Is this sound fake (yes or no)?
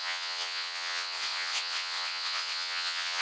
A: yes